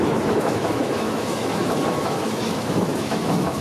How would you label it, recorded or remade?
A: remade